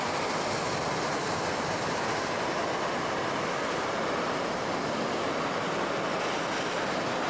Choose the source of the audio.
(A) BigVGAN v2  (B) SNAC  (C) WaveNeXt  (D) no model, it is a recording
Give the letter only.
D